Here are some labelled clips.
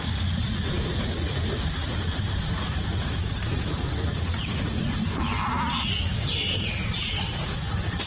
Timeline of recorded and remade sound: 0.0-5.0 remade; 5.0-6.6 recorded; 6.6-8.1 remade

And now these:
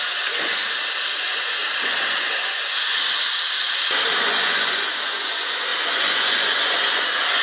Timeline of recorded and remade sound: 0.0-0.6 remade; 0.6-1.2 recorded; 1.2-1.6 remade; 1.6-2.1 recorded; 2.1-2.9 remade; 2.9-4.2 recorded; 4.2-7.4 remade

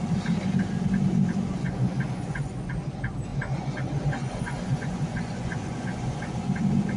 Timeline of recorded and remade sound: 0.0-1.5 recorded; 1.5-2.7 remade; 2.7-3.3 recorded; 3.3-6.4 remade; 6.4-7.0 recorded

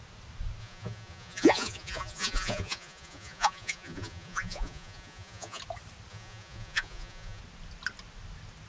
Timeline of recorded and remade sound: 0.0-0.6 recorded; 0.6-5.6 remade; 5.6-6.1 recorded; 6.1-7.4 remade; 7.4-8.7 recorded

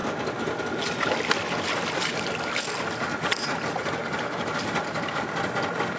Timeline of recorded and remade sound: 0.0-3.1 recorded; 3.1-3.6 remade; 3.6-6.0 recorded

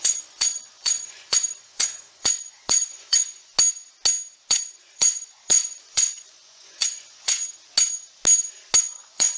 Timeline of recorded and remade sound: 0.0-3.5 remade; 3.5-4.5 recorded; 4.5-7.4 remade; 7.4-8.8 recorded; 8.8-9.4 remade

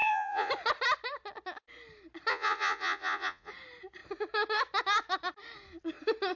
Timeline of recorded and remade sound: 0.0-0.5 remade; 0.5-2.3 recorded; 2.3-3.5 remade; 3.5-6.4 recorded

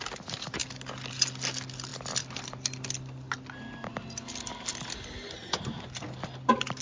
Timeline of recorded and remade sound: 0.0-6.8 recorded